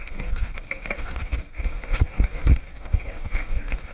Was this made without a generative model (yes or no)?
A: no